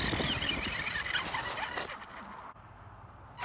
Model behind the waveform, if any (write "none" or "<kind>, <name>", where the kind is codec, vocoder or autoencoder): none